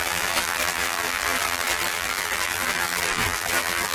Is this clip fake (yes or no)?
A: yes